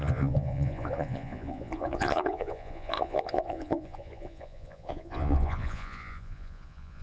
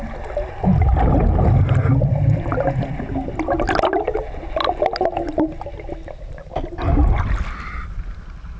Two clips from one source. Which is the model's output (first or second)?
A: first